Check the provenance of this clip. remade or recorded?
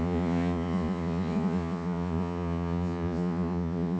remade